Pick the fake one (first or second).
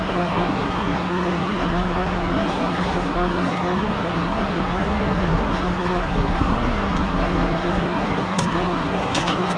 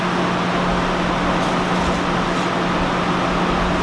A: first